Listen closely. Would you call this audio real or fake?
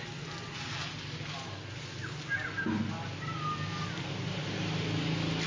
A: real